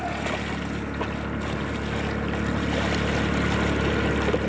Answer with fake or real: real